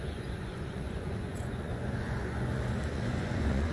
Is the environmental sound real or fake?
fake